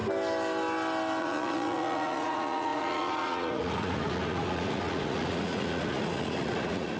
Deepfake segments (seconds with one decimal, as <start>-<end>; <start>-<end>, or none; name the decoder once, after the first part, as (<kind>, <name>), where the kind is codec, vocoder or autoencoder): 1.2-7.0 (vocoder, Vocos)